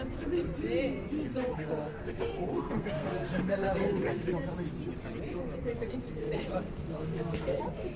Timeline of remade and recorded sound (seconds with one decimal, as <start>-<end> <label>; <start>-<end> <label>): 0.0-1.3 recorded; 1.3-4.3 remade; 4.3-6.2 recorded; 6.2-7.6 remade; 7.6-8.0 recorded

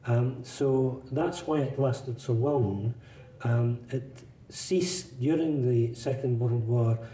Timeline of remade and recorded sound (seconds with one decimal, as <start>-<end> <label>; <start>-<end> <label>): 0.0-1.2 recorded; 1.2-3.8 remade; 3.8-6.1 recorded; 6.1-6.6 remade; 6.6-7.1 recorded

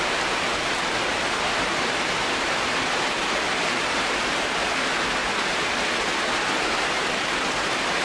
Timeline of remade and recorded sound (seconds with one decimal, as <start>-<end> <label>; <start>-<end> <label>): 0.0-8.0 recorded

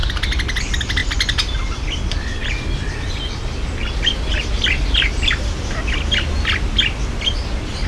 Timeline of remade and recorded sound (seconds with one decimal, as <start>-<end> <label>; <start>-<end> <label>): 0.0-7.9 recorded

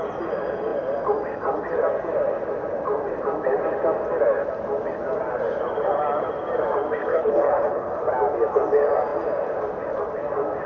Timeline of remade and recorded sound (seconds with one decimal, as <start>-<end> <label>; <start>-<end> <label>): 0.0-7.1 recorded; 7.1-8.0 remade; 8.0-10.7 recorded

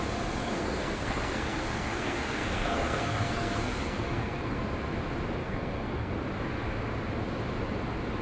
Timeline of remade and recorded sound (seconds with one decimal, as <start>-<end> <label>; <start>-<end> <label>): 0.0-0.4 recorded; 0.4-4.6 remade; 4.6-5.4 recorded; 5.4-6.1 remade; 6.1-8.2 recorded

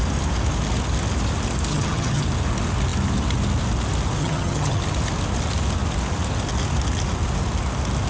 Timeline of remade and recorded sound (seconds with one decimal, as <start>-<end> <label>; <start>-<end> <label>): 0.0-1.7 recorded; 1.7-2.2 remade; 2.2-4.2 recorded; 4.2-4.8 remade; 4.8-8.1 recorded